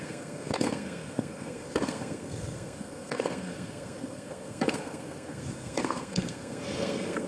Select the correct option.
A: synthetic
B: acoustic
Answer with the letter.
A